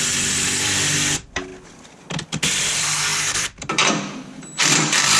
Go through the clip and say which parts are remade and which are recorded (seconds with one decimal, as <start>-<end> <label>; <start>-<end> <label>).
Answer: 0.0-1.5 remade; 1.5-2.7 recorded; 2.7-5.2 remade